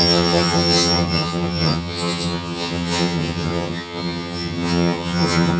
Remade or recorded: remade